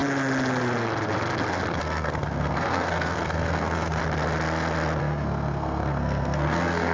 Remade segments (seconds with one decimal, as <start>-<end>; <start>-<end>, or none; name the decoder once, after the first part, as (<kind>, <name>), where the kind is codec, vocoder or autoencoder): 1.8-4.0 (codec, SNAC); 5.0-6.9